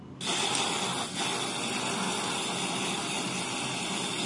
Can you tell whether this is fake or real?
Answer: real